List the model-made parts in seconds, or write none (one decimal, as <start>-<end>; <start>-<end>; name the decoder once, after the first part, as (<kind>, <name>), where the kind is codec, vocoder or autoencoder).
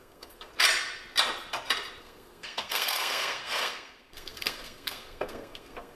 0.0-0.5 (codec, SNAC); 2.0-6.0